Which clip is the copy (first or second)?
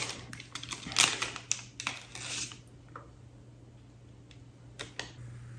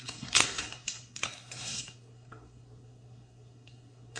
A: second